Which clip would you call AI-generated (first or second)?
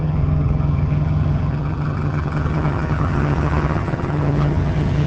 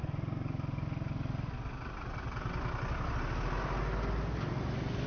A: first